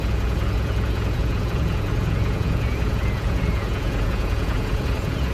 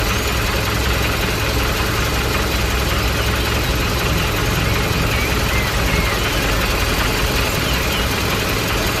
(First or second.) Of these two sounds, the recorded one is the second